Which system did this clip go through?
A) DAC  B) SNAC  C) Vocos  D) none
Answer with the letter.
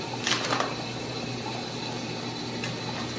D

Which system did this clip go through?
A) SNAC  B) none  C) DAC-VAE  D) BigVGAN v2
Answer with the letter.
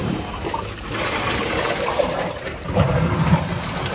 D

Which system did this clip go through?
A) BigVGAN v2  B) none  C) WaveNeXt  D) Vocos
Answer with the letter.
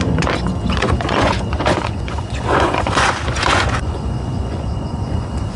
D